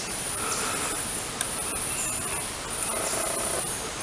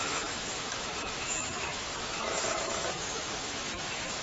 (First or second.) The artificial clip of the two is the second